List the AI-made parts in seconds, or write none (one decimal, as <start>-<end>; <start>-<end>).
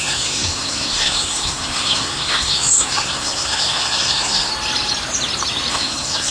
0.0-4.5; 5.7-6.3